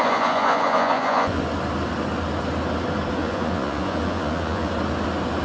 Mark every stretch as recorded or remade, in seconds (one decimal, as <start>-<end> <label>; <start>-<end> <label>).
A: 0.0-1.4 remade; 1.4-3.2 recorded; 3.2-4.7 remade; 4.7-5.4 recorded